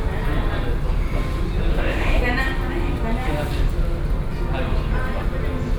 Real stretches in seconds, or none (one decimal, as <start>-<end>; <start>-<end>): 0.0-1.7; 2.2-5.8